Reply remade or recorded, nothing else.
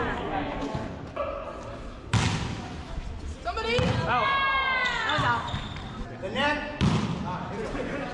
recorded